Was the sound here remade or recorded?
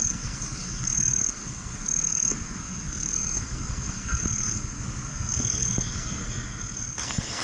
remade